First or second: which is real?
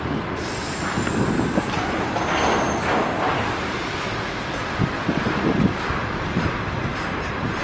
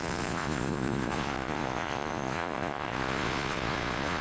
first